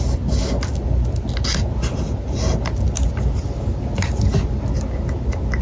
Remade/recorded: recorded